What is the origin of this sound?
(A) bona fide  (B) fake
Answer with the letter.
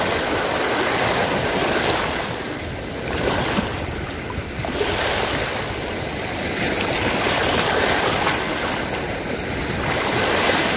A